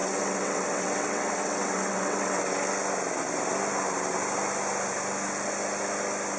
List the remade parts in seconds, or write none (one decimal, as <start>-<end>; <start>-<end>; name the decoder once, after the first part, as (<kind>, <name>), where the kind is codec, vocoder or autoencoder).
0.0-2.4 (vocoder, WaveNeXt)